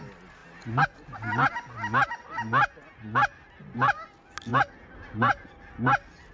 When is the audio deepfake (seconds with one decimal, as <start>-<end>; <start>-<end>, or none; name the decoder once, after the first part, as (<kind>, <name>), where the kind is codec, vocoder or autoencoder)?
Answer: none